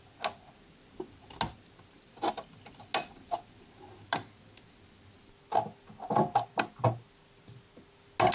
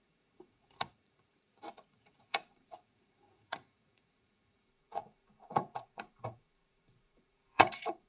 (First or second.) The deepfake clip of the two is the second